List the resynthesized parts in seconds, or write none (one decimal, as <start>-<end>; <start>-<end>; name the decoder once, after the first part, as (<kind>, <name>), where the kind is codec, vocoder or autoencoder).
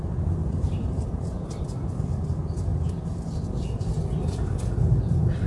0.4-1.6 (vocoder, BigVGAN v2)